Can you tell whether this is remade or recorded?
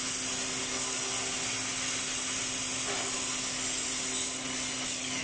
recorded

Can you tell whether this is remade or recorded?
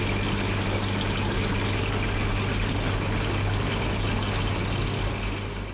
recorded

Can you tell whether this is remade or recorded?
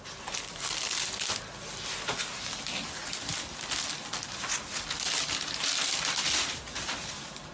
recorded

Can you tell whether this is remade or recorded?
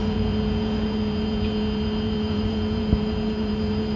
remade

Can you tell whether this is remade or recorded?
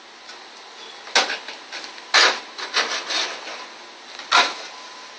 recorded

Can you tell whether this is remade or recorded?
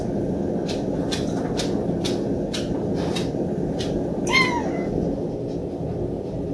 recorded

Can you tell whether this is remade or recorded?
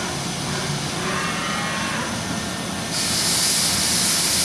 recorded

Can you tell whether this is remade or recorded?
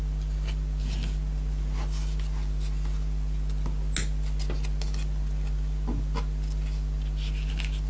recorded